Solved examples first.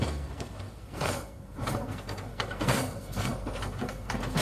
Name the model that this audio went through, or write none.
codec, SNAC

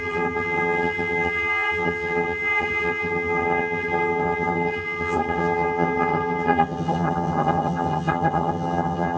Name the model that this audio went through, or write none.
vocoder, HiFi-GAN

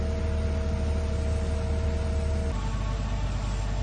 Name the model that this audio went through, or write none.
none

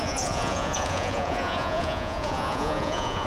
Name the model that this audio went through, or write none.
vocoder, Vocos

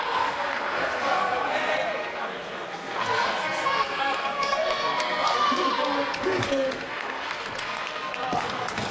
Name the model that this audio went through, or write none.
codec, SNAC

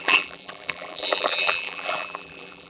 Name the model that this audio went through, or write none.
vocoder, BigVGAN v2